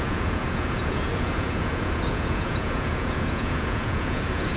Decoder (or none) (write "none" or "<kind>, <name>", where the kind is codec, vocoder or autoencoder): vocoder, Vocos